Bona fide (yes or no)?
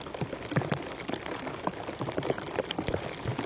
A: yes